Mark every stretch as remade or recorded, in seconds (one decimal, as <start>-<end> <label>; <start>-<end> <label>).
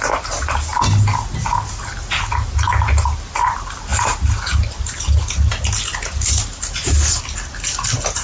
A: 0.0-8.2 recorded